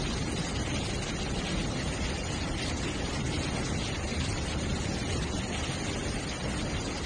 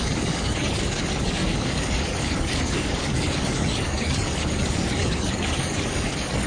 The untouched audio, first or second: first